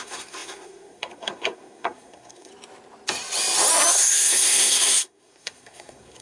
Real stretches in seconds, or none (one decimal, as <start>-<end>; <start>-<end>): 2.5-3.9

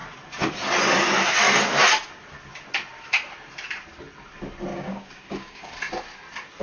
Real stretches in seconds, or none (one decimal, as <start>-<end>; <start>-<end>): 0.0-4.7; 5.7-6.6

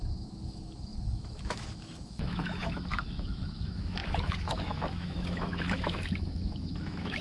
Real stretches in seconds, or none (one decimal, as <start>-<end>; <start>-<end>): none

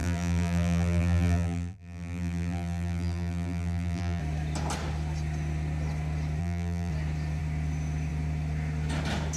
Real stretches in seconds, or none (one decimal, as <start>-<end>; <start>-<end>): 4.2-6.4; 6.9-9.4